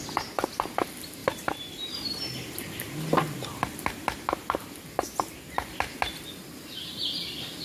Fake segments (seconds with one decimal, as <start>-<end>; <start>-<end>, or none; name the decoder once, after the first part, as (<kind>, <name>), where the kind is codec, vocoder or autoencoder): 1.2-1.8 (vocoder, BigVGAN v2)